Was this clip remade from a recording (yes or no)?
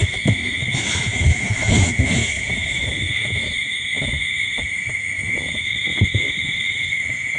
yes